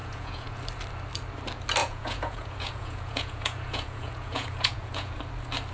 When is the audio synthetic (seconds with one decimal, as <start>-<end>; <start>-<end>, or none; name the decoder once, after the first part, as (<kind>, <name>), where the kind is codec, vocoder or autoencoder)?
0.0-0.6 (vocoder, Vocos); 1.8-5.2